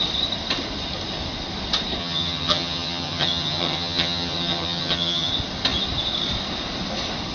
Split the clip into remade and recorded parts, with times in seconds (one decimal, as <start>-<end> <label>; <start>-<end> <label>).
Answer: 0.0-2.0 recorded; 2.0-5.3 remade; 5.3-7.3 recorded